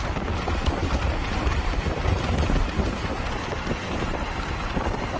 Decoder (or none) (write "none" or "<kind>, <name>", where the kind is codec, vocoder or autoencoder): none